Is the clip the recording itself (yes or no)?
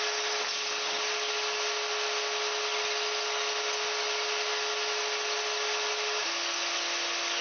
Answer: yes